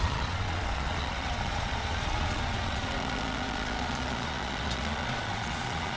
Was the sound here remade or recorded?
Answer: remade